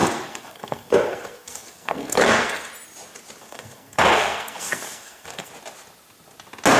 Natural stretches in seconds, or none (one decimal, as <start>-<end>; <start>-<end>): 2.7-3.4; 5.5-6.8